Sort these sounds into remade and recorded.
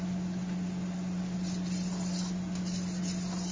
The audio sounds recorded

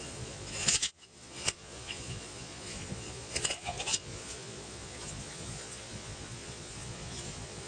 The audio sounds remade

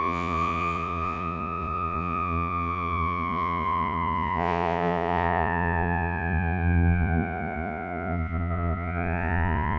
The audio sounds remade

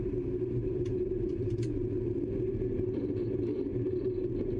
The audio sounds remade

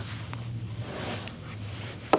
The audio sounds remade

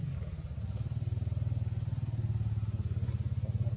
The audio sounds recorded